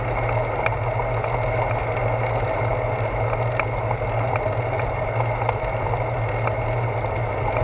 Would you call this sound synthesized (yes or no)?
no